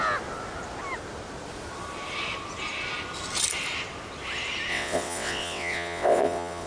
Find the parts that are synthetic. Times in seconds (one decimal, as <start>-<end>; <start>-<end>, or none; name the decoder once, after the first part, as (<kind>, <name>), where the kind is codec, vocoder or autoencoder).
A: 4.7-6.7 (vocoder, WaveNeXt)